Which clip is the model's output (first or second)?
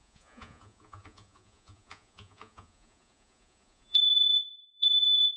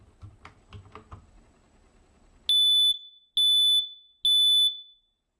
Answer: first